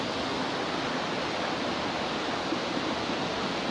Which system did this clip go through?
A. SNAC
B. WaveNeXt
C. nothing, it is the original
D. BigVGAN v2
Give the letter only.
C